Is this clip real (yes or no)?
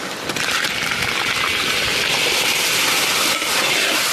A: yes